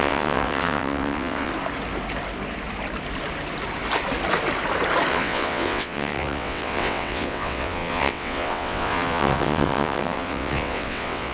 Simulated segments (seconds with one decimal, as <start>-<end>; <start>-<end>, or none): 0.0-1.5; 5.1-11.3